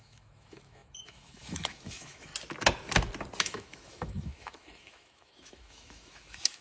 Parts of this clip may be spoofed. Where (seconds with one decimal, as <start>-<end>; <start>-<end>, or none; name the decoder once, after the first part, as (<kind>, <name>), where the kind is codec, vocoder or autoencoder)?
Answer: 0.0-2.3 (autoencoder, DAC-VAE); 3.4-6.6